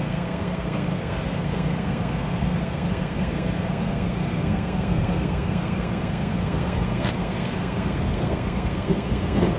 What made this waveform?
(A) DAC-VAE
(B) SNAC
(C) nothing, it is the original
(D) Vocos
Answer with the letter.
B